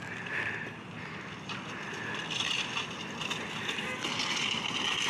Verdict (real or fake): real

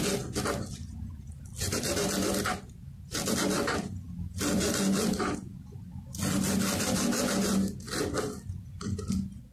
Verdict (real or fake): real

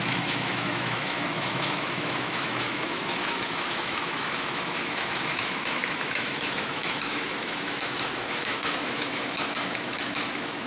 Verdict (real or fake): fake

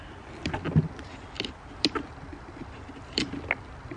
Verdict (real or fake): real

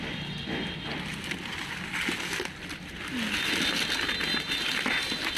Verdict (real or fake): real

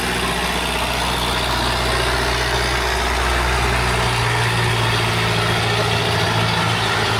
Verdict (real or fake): real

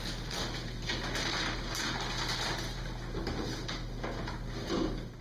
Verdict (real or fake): real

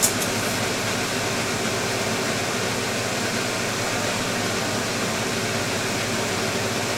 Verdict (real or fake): real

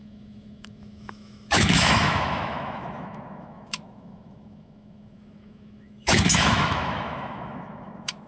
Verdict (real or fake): fake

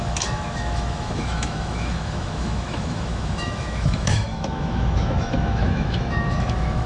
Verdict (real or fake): fake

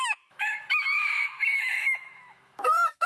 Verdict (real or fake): fake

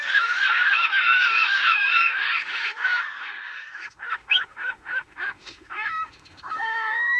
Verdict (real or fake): fake